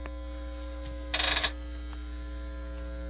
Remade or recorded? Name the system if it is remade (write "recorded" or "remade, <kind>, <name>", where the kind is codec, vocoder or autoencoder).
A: recorded